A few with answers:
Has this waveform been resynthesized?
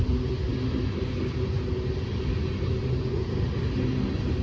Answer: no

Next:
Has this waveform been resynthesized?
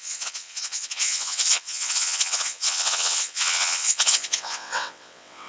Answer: yes